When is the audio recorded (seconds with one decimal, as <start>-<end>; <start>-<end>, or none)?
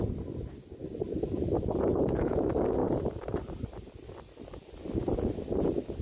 0.0-1.9; 2.4-2.8; 3.9-6.0